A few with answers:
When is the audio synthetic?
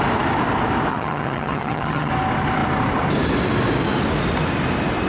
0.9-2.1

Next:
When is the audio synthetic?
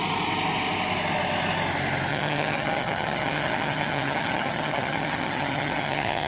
2.1-6.3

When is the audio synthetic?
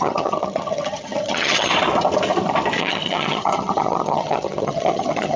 0.0-1.7; 2.8-5.4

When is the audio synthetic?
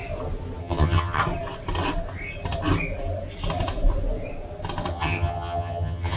0.6-1.2; 4.9-6.2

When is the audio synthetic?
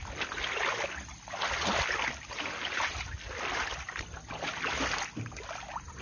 none